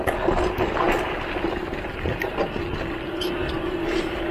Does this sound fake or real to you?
real